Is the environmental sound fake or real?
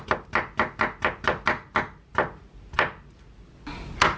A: real